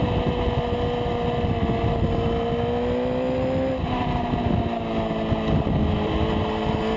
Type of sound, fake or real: real